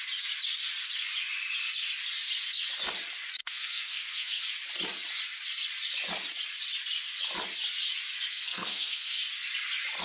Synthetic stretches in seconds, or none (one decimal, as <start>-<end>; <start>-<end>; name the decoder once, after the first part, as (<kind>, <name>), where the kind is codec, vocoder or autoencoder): 3.4-4.4 (codec, SNAC); 8.3-9.2

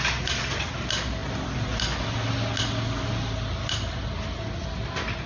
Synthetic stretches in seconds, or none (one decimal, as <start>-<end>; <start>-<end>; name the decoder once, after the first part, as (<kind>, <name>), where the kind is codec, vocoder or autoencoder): none